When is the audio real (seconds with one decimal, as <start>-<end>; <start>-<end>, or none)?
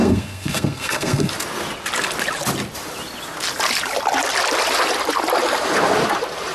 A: 1.3-6.5